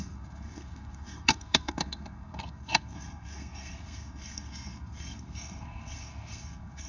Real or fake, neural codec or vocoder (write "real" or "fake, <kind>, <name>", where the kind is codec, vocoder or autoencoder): fake, codec, SNAC